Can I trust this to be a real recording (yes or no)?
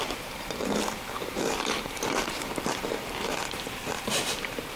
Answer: no